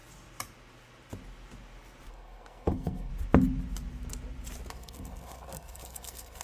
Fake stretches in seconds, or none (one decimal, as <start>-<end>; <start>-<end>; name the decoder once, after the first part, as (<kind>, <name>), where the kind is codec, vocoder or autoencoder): 2.1-3.1 (codec, SNAC); 4.7-6.4